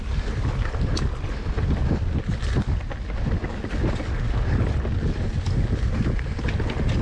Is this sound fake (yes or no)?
no